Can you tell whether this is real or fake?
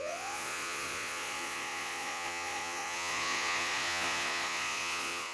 fake